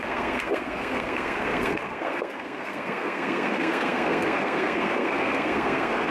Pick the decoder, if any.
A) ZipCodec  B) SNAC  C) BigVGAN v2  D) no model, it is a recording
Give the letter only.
B